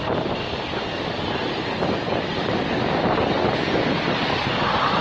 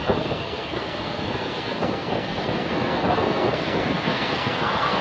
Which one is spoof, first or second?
second